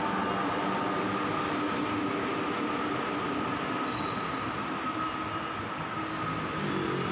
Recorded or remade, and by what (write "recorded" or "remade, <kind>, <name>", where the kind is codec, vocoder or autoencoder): recorded